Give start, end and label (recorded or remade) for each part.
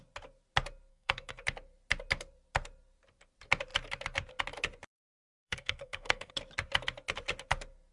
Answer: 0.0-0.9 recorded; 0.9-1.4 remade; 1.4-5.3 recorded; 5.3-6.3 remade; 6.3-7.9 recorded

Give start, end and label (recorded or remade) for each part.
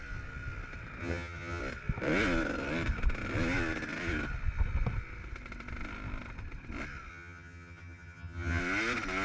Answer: 0.0-1.0 recorded; 1.0-1.6 remade; 1.6-7.1 recorded; 7.1-8.6 remade; 8.6-9.2 recorded